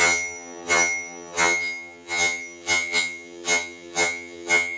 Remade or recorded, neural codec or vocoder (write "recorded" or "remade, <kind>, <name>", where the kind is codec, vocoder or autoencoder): remade, vocoder, HiFi-GAN